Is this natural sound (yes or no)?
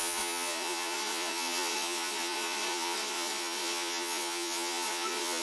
no